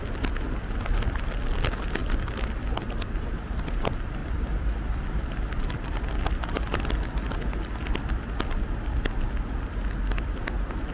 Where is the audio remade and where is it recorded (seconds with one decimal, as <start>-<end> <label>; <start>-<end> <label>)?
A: 0.0-2.0 recorded; 2.0-3.1 remade; 3.1-4.2 recorded; 4.2-6.1 remade; 6.1-10.9 recorded